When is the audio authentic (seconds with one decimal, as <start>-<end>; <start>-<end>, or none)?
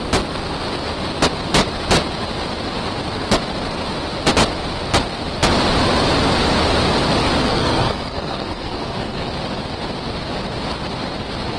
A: 0.0-7.4; 9.3-11.6